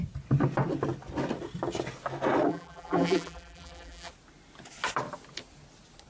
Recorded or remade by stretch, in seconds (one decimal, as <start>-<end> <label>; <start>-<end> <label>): 0.0-2.5 recorded; 2.5-4.1 remade; 4.1-6.1 recorded